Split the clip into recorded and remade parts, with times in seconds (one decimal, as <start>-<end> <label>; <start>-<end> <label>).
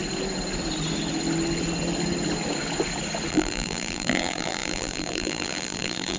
0.0-3.3 recorded; 3.3-6.2 remade